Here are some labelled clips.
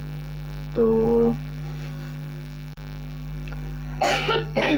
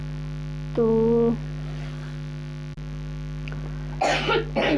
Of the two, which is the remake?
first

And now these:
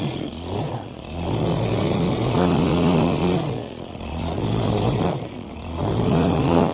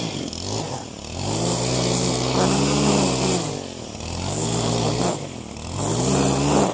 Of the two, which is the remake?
first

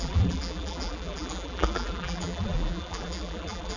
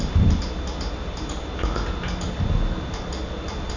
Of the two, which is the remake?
first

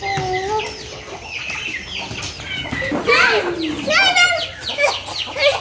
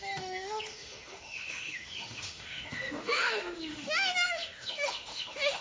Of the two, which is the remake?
second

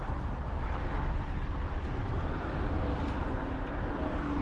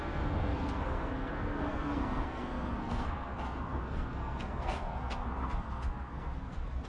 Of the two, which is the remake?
second